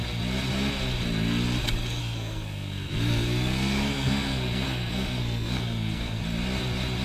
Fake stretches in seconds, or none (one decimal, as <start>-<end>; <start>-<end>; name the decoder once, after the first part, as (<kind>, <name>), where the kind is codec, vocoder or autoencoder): 2.0-6.2 (codec, SNAC)